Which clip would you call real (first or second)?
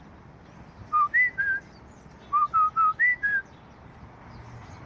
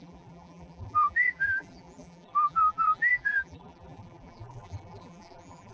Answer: first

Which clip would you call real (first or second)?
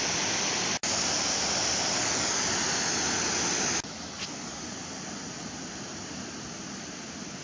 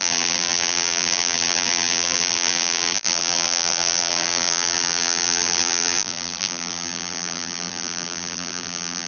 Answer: first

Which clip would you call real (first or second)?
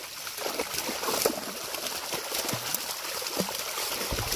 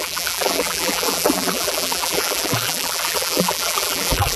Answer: first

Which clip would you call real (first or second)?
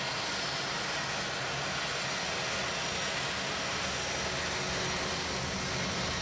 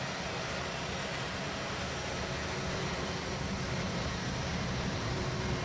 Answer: first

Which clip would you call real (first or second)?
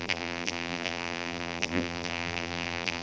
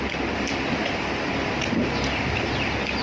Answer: second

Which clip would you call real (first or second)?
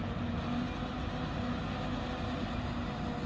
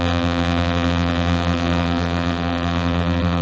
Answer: first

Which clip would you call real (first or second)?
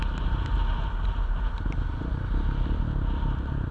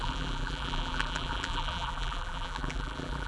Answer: first